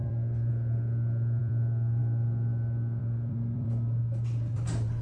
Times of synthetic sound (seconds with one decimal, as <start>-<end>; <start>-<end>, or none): 0.0-0.5; 1.4-2.0; 3.0-5.0